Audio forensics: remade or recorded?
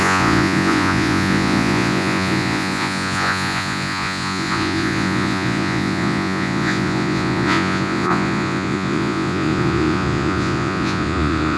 remade